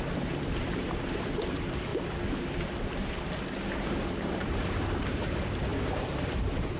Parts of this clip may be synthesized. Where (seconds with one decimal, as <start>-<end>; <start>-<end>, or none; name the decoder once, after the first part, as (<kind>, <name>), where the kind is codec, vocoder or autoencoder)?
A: 0.0-1.9 (vocoder, BigVGAN v2); 3.8-6.8